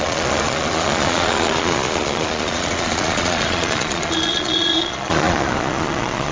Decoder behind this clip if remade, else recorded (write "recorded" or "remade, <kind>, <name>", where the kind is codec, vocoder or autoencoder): remade, vocoder, Vocos